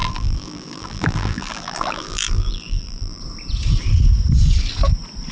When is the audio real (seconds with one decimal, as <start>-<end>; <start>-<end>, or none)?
3.2-5.3